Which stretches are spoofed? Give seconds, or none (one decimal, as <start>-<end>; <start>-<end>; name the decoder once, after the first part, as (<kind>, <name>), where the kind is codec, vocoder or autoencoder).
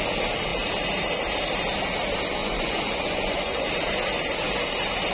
2.4-3.7 (vocoder, Vocos)